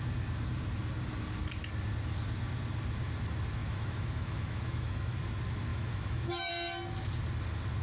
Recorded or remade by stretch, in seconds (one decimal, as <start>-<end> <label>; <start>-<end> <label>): 0.0-3.6 recorded; 3.6-5.2 remade; 5.2-5.7 recorded; 5.7-6.5 remade; 6.5-7.8 recorded

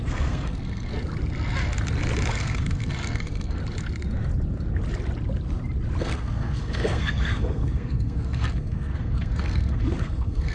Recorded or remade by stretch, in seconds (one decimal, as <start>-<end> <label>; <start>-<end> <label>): 0.0-0.9 remade; 0.9-2.3 recorded; 2.3-3.6 remade; 3.6-6.0 recorded; 6.0-10.5 remade

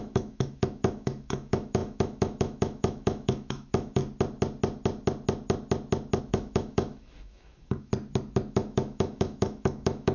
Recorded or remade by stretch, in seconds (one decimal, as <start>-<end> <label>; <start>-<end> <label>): 0.0-4.0 remade; 4.0-6.2 recorded; 6.2-7.9 remade; 7.9-8.5 recorded; 8.5-10.1 remade

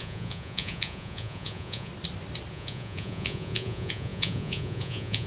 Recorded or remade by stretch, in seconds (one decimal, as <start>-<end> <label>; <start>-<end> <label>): 0.0-1.9 remade; 1.9-2.5 recorded; 2.5-5.3 remade

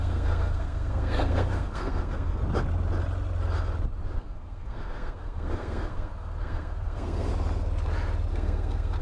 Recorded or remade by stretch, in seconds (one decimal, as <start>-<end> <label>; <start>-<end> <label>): 0.0-2.4 remade; 2.4-4.2 recorded; 4.2-7.3 remade; 7.3-8.3 recorded; 8.3-9.0 remade